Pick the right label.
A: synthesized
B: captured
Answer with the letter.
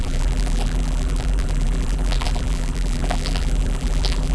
A